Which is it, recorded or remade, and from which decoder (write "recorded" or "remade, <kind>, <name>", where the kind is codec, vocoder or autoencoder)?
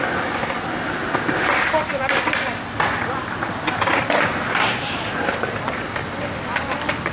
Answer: recorded